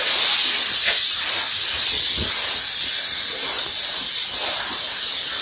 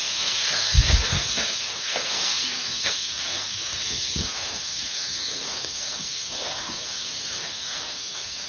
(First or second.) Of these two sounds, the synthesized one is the second